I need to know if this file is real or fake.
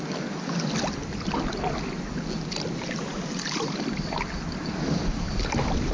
real